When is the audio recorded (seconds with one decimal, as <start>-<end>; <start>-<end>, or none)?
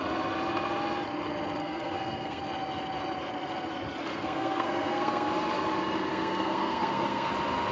0.0-1.6; 2.4-4.1; 5.3-6.1; 7.3-7.7